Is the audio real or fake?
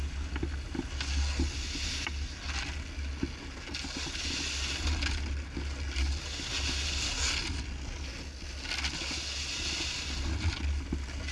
real